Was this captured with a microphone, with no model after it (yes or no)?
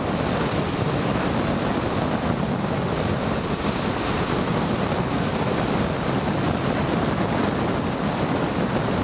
yes